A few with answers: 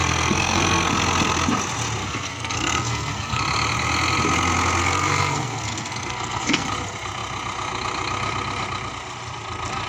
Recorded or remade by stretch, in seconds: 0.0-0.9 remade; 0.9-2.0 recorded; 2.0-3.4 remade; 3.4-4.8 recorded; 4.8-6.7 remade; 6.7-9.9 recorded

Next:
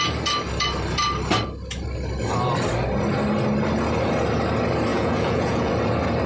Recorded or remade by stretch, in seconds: 0.0-4.9 recorded; 4.9-5.7 remade; 5.7-6.3 recorded

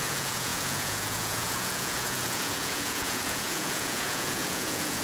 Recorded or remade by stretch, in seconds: 0.0-5.0 remade

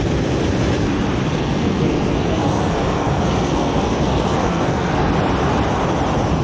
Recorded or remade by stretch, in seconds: 0.0-1.3 recorded; 1.3-5.1 remade; 5.1-6.4 recorded

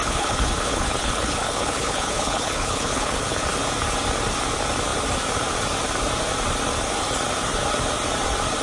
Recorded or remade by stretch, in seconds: 0.0-3.4 remade; 3.4-8.6 recorded